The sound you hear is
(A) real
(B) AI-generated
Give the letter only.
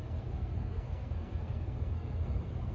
B